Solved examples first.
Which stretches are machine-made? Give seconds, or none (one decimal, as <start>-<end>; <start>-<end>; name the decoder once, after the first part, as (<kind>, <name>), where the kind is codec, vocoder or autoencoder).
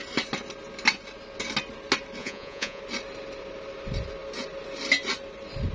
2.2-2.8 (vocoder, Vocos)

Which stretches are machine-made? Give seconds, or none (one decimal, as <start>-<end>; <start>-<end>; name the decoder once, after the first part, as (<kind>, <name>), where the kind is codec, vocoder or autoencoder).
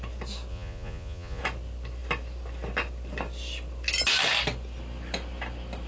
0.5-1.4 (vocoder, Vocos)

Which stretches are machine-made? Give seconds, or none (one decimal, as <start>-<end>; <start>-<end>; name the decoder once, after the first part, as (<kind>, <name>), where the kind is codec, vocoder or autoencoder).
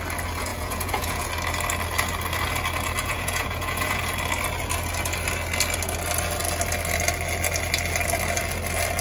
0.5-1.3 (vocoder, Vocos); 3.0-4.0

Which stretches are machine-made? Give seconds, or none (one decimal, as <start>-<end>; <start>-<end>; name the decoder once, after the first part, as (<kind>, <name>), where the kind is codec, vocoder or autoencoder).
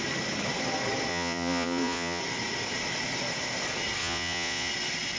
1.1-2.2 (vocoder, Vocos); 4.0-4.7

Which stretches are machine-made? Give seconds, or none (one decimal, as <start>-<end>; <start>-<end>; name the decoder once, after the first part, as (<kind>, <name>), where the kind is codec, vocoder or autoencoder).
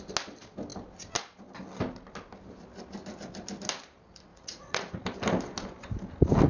4.3-4.9 (vocoder, Vocos)